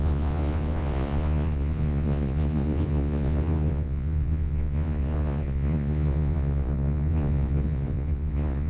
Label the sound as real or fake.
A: fake